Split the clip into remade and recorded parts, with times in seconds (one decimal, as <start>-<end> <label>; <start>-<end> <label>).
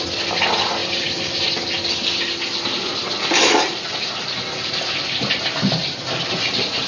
0.0-6.9 recorded